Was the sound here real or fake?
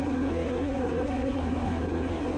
fake